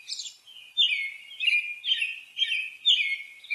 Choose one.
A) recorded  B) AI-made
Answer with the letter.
A